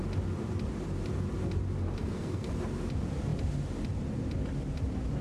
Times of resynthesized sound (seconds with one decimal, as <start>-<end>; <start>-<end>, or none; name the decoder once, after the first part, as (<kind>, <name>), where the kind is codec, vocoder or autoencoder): 2.0-2.5 (codec, SNAC)